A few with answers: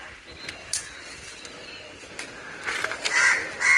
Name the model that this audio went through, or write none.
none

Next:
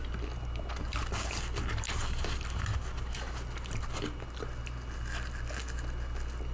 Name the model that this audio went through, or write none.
none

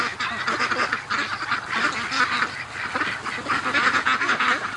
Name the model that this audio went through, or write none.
none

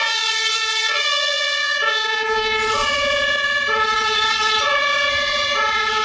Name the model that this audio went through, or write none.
vocoder, Vocos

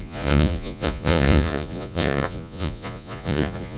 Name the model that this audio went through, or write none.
vocoder, Vocos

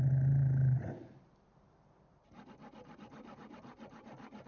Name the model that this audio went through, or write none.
none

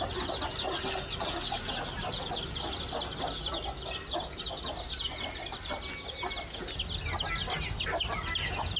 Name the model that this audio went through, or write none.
none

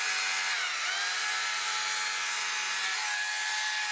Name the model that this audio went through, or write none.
none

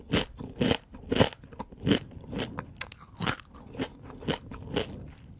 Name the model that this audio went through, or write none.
none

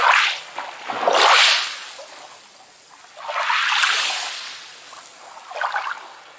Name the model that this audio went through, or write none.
none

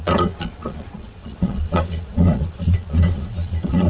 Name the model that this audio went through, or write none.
vocoder, Vocos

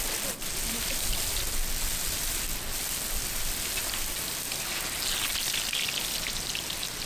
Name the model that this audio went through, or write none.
none